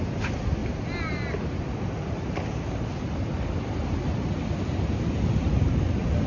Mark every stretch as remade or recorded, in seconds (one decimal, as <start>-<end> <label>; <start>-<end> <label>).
0.0-6.3 recorded